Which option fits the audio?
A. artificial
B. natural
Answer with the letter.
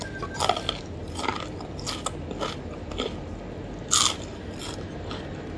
B